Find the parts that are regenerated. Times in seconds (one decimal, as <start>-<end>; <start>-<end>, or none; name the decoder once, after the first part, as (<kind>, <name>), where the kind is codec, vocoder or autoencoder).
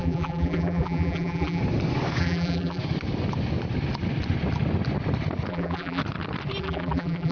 0.0-1.6 (vocoder, BigVGAN v2); 2.2-2.8; 5.5-6.0; 6.6-7.3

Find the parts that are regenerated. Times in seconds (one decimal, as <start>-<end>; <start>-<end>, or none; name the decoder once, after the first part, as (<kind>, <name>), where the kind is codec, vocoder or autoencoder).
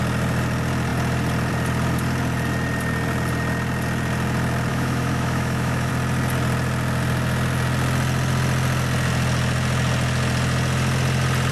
4.7-5.9 (autoencoder, DAC-VAE)